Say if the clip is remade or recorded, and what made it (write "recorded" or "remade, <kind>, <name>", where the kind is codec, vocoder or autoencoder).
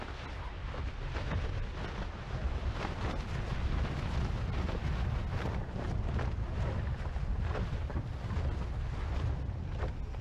recorded